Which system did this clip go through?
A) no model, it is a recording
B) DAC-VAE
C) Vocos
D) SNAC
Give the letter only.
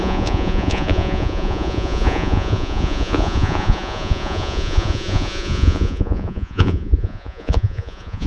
C